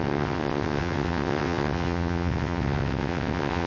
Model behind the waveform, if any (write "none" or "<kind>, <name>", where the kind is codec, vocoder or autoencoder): vocoder, WaveNeXt